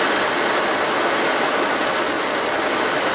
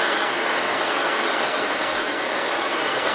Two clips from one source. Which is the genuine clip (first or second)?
first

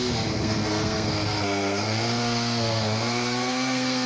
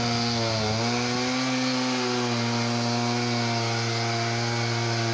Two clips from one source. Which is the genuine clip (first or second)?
second